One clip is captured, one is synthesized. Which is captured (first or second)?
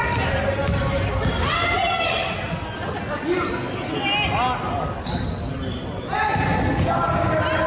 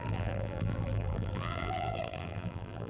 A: first